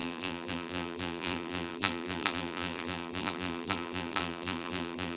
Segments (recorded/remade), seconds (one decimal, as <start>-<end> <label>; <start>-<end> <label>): 0.0-5.2 remade